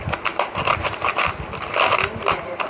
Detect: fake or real real